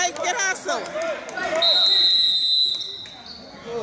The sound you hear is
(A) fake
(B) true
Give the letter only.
B